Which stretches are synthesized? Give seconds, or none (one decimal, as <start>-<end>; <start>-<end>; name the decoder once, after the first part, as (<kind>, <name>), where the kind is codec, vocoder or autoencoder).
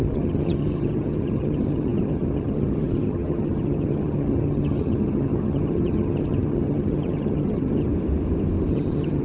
0.0-7.9 (vocoder, HiFi-GAN); 8.7-9.2